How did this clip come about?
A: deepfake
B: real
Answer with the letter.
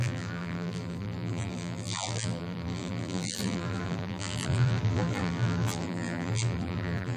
A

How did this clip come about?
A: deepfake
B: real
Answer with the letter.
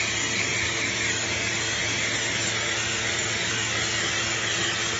B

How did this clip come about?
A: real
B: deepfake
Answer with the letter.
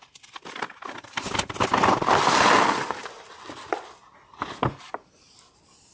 A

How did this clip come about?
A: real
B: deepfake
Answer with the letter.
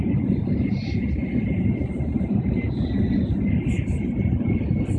A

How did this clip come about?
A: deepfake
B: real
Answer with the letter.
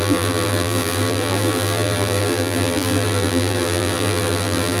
A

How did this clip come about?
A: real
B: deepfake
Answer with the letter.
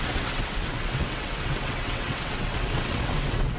B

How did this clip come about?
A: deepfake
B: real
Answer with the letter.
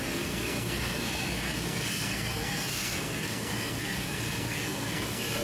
A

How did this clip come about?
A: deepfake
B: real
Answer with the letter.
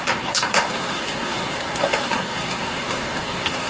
A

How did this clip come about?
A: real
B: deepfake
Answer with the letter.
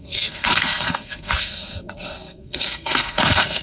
B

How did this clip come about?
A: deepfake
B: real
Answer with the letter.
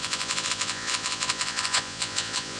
A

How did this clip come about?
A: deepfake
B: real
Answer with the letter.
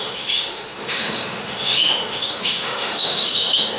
A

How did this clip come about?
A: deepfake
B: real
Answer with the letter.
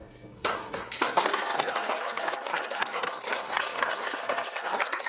A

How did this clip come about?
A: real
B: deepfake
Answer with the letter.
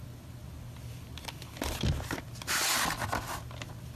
A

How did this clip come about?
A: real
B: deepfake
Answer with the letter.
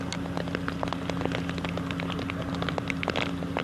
A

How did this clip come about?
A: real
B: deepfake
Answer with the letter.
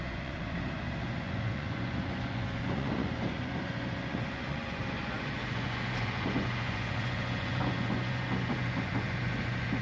B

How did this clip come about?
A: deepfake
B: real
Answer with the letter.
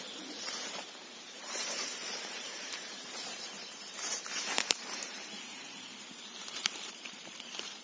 A